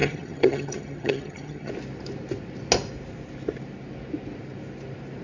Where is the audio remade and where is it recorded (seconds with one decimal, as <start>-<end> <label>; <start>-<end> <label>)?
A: 0.0-1.7 remade; 1.7-5.2 recorded